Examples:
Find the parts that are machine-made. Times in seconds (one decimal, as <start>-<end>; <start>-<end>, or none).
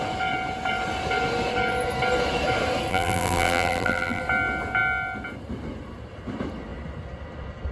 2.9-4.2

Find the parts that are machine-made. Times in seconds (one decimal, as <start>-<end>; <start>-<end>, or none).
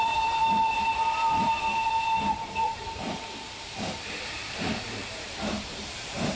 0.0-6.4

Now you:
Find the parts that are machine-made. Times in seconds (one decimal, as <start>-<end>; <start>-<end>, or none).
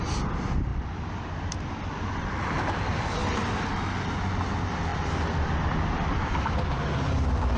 0.0-3.2; 4.4-7.6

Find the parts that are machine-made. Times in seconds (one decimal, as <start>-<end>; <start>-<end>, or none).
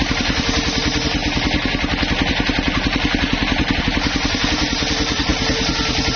0.0-1.2; 3.8-5.3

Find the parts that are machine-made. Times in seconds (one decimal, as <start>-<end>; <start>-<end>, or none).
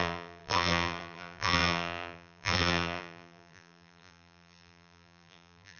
0.0-5.8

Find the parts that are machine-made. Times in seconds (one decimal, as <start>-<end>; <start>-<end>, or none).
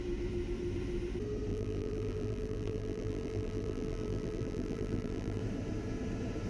1.5-5.4